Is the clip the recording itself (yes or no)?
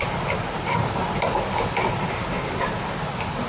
yes